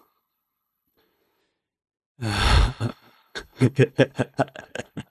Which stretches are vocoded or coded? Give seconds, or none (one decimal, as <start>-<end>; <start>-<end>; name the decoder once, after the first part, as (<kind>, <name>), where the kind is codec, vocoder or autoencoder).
0.0-1.4 (codec, HILCodec); 2.8-5.1